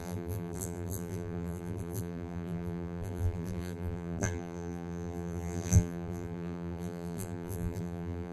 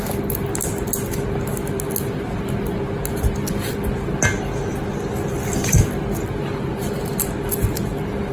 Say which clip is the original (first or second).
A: second